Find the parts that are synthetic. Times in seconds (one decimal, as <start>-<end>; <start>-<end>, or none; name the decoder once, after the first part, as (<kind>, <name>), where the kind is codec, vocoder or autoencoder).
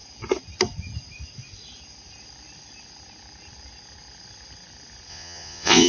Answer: 5.1-5.9 (vocoder, Vocos)